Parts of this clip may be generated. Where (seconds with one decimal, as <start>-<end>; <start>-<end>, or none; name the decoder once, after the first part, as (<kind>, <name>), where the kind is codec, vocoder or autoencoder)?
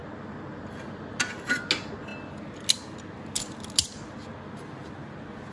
none